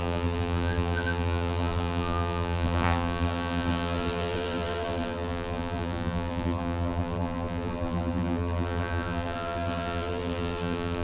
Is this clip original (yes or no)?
no